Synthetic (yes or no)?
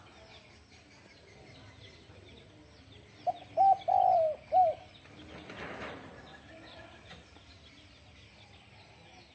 no